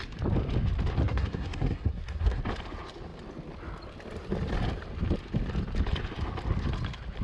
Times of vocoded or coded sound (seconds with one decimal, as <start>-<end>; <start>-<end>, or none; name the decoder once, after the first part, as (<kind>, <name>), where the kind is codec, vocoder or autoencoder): 1.0-2.4 (codec, SNAC)